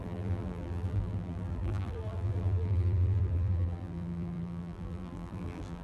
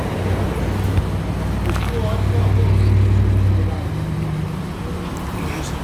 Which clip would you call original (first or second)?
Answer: second